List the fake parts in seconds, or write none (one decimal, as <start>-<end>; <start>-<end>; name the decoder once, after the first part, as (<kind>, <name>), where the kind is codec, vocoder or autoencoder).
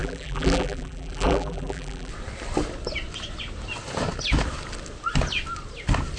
0.0-2.1 (vocoder, BigVGAN v2)